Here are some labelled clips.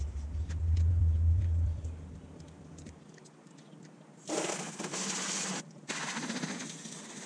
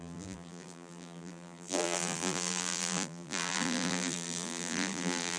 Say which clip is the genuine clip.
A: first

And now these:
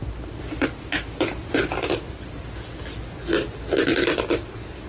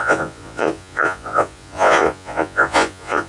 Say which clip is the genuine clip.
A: first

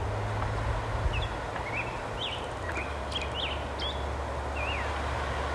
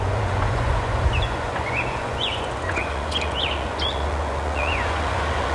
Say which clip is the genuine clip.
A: first